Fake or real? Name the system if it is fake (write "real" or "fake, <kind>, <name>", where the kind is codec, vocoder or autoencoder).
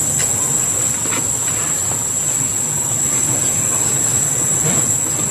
real